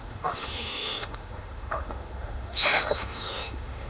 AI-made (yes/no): yes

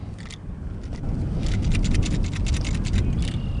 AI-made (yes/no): no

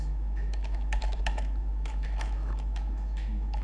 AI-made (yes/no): yes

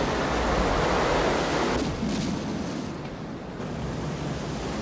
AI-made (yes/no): no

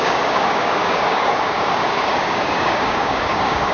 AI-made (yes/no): yes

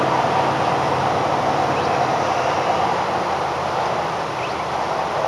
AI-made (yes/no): no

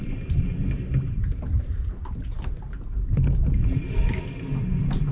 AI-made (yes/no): no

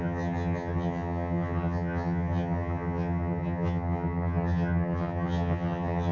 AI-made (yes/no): yes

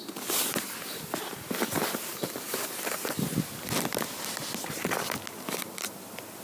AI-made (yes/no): no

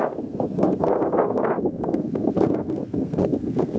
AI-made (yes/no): yes